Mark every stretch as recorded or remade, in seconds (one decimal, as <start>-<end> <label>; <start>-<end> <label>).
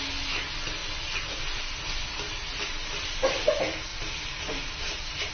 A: 0.0-5.3 recorded